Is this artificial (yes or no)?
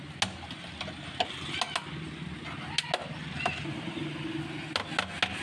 no